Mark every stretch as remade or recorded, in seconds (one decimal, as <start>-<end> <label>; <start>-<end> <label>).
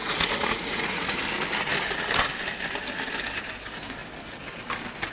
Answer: 0.0-1.2 remade; 1.2-5.1 recorded